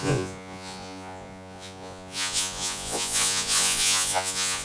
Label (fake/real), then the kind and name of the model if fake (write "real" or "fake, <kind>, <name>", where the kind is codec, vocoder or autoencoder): fake, vocoder, Vocos